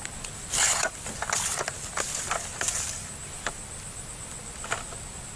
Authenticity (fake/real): real